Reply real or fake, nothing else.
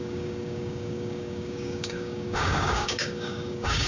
fake